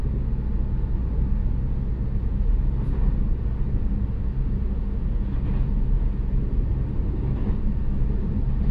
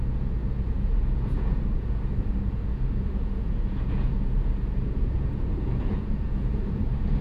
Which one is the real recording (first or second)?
first